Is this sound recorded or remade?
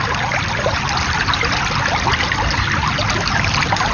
recorded